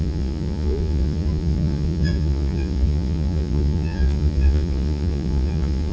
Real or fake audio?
fake